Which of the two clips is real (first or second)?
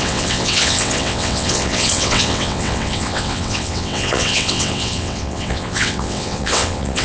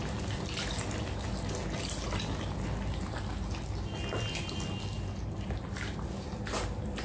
second